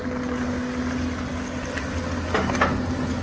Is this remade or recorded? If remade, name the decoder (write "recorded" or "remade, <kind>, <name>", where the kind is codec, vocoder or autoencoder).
recorded